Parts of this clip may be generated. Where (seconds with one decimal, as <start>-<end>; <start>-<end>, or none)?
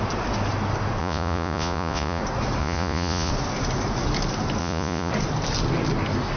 1.0-2.2; 2.6-3.3; 4.6-5.1